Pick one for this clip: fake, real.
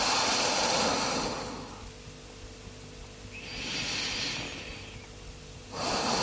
real